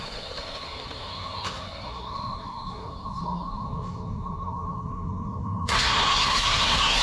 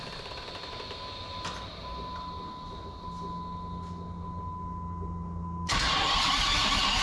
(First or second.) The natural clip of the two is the second